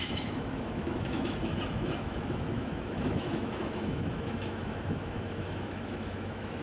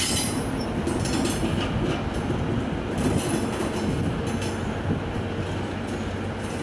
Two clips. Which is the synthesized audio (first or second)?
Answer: first